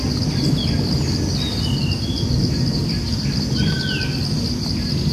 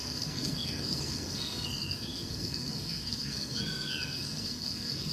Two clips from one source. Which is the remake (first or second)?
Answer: second